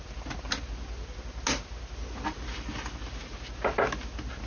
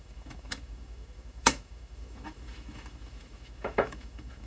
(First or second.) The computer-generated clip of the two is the second